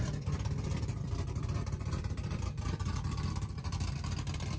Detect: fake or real fake